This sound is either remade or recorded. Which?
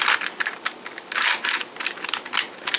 recorded